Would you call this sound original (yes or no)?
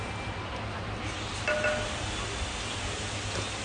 yes